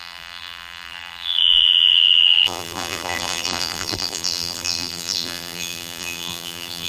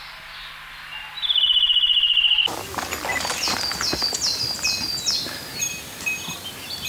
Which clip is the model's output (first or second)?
first